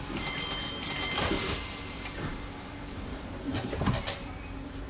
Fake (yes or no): yes